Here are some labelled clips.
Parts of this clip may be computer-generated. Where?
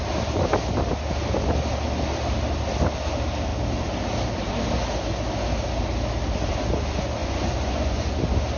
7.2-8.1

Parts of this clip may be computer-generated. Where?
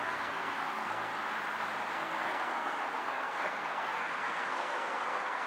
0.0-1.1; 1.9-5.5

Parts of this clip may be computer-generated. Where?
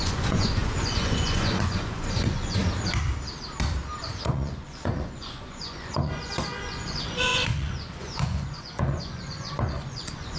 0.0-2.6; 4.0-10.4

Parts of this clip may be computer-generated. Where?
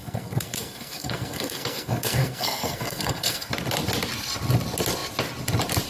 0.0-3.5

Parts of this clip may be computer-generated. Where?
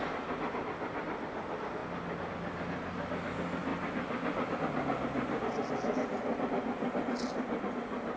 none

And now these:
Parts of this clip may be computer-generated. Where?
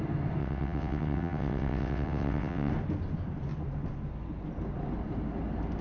0.4-2.7